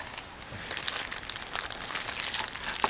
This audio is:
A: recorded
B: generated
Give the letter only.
A